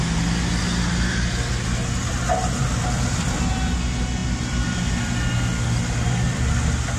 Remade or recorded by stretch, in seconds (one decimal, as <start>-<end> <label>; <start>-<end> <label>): 0.0-7.0 recorded